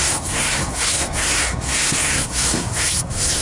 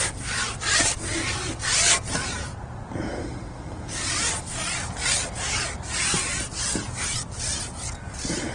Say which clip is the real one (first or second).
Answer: second